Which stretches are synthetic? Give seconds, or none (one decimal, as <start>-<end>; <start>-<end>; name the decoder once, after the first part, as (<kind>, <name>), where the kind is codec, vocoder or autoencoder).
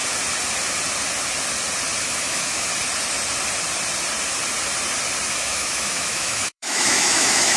2.0-2.7 (autoencoder, DAC-VAE); 5.3-7.6